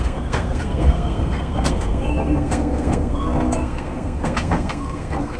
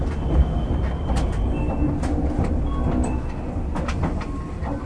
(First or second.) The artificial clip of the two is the first